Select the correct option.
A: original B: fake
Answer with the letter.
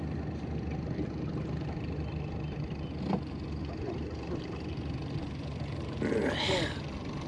A